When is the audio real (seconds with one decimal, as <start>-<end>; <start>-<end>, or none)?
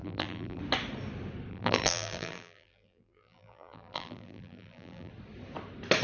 0.6-1.5; 5.1-6.0